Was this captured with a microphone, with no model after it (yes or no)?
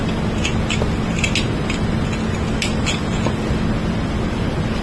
yes